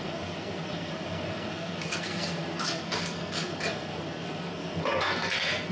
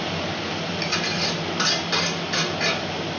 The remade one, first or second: first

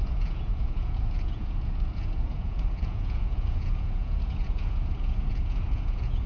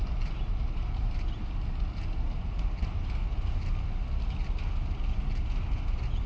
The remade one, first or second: first